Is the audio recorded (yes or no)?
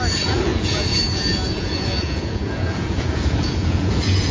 no